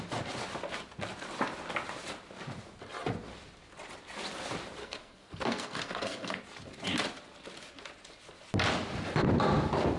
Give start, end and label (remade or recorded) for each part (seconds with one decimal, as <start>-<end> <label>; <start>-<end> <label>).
0.0-4.8 recorded; 4.8-6.4 remade; 6.4-10.0 recorded